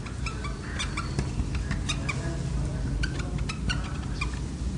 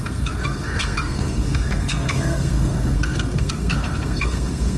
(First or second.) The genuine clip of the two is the first